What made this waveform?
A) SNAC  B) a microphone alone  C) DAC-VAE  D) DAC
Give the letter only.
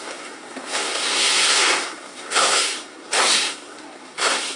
A